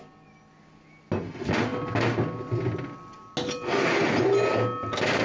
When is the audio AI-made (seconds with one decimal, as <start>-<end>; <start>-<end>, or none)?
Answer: none